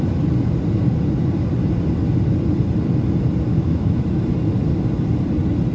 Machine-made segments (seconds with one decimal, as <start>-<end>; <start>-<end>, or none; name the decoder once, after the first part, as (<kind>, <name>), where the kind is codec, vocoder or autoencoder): 3.5-4.1 (autoencoder, DAC-VAE)